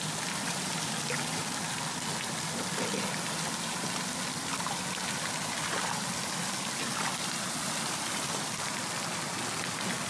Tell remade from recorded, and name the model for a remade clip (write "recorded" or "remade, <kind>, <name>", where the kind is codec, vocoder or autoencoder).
recorded